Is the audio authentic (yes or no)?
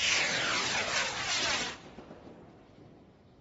yes